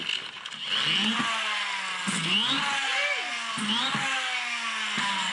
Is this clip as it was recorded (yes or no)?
yes